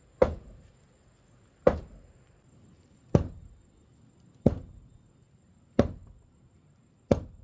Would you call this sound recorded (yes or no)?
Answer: yes